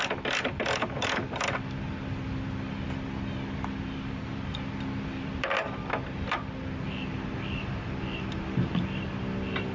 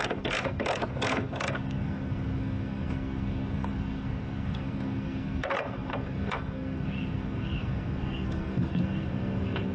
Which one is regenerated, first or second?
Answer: second